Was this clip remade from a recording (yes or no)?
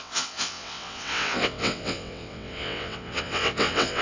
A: yes